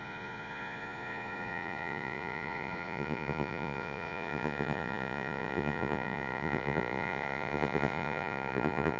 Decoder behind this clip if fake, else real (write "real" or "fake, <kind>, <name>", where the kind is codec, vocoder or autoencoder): fake, vocoder, Vocos